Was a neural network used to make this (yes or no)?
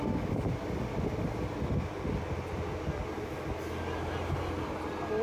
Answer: no